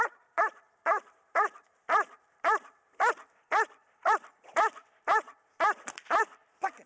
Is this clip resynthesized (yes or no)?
yes